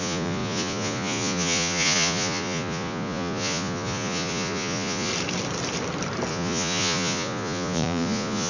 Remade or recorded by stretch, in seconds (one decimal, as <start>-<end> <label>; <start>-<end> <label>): 0.0-5.1 remade; 5.1-6.3 recorded; 6.3-8.5 remade